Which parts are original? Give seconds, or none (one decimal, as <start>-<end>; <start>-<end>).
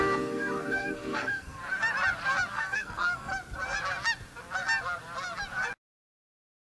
1.6-2.5; 3.3-6.6